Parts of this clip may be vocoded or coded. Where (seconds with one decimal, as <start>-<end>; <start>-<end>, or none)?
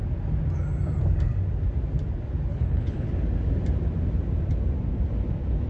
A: 2.5-3.1